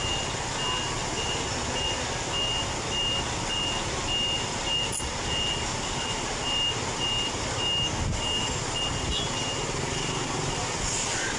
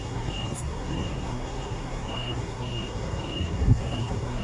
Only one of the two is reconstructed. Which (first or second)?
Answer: second